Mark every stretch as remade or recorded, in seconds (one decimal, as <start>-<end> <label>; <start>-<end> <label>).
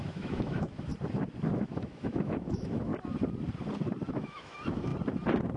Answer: 0.0-0.9 remade; 0.9-1.6 recorded; 1.6-2.9 remade; 2.9-4.1 recorded; 4.1-4.9 remade; 4.9-5.6 recorded